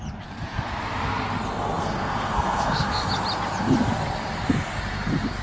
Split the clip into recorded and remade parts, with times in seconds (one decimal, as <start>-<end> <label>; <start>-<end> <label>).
0.0-1.8 recorded; 1.8-3.1 remade; 3.1-5.4 recorded